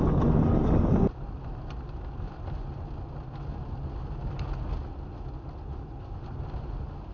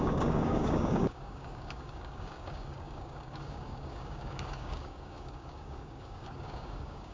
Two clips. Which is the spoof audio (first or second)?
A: second